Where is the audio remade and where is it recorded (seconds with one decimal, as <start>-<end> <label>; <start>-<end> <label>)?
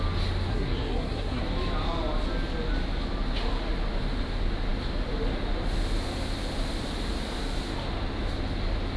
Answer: 0.0-0.5 recorded; 0.5-1.4 remade; 1.4-9.0 recorded